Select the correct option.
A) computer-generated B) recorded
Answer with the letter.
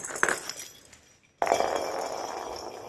B